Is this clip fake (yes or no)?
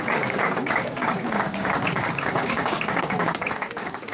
yes